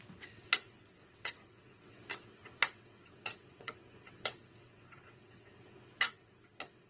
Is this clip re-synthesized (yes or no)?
yes